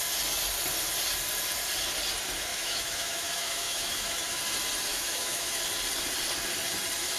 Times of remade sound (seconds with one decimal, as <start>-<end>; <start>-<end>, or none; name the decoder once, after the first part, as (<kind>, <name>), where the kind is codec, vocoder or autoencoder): 2.5-4.4 (autoencoder, DAC-VAE); 4.9-5.6